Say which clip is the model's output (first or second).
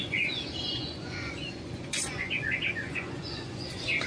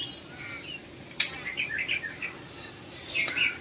first